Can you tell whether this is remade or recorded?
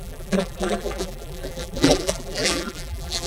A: remade